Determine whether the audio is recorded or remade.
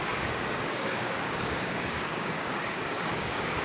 remade